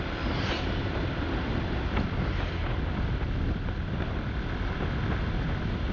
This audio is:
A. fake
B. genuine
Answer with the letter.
B